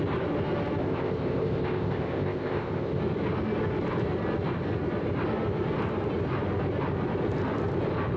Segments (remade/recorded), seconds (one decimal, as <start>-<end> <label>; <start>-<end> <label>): 0.0-0.8 recorded; 0.8-3.0 remade; 3.0-8.2 recorded